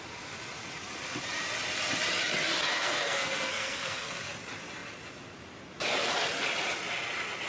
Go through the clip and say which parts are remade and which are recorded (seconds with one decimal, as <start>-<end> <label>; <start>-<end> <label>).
0.0-2.7 recorded; 2.7-4.2 remade; 4.2-7.5 recorded